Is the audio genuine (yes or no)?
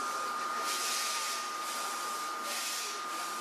no